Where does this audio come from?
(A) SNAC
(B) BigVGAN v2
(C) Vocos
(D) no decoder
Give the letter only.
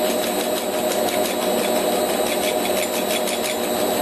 D